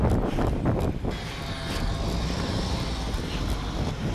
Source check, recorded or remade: recorded